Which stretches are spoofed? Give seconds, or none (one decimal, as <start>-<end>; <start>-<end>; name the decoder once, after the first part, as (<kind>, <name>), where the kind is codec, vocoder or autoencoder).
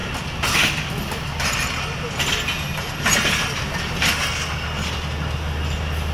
none